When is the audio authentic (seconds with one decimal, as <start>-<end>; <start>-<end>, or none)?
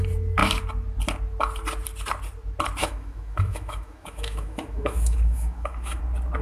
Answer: 0.0-2.8; 6.0-6.4